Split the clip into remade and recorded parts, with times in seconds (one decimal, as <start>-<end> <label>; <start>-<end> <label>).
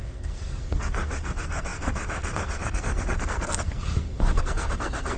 0.0-5.2 remade